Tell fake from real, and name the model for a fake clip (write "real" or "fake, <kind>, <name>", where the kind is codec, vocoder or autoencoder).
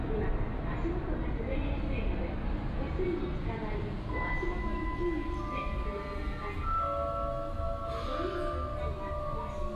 real